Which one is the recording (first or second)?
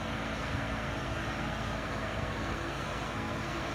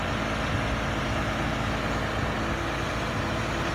second